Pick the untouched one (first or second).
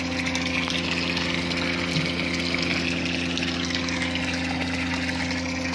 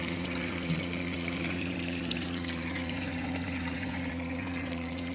first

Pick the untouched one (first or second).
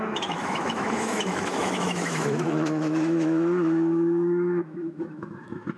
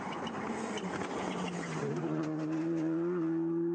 second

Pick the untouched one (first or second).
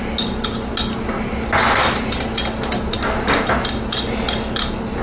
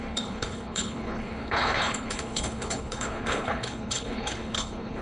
first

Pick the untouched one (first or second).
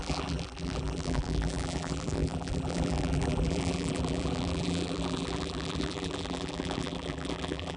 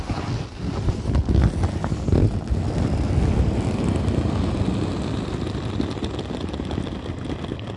second